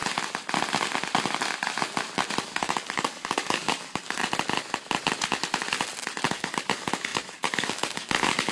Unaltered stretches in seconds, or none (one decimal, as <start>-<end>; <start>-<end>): 0.0-2.4; 4.2-6.3